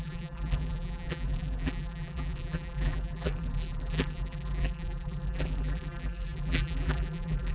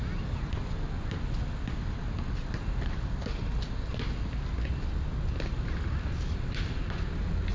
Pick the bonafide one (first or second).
second